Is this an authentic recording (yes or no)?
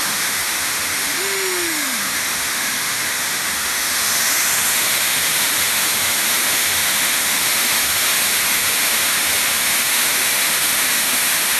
no